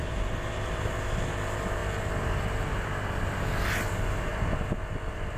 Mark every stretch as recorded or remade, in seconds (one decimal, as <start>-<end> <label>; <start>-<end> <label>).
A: 0.0-0.9 remade; 0.9-5.4 recorded